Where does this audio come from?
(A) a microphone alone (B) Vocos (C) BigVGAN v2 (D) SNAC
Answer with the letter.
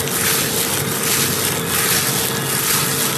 A